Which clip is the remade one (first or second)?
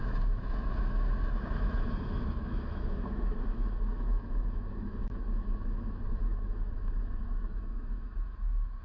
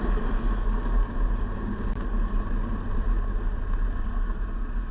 first